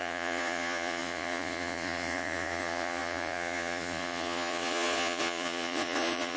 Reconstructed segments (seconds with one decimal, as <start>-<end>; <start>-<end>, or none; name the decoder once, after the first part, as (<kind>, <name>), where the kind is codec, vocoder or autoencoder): 0.0-6.4 (vocoder, Vocos)